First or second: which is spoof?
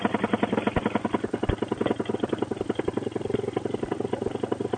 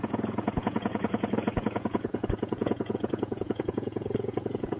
second